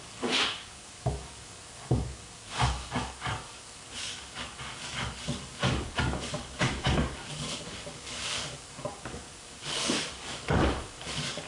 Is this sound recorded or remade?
remade